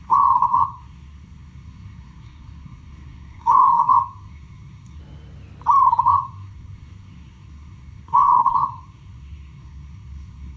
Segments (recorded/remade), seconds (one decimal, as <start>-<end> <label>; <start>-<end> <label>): 0.0-5.0 remade; 5.0-6.0 recorded; 6.0-10.6 remade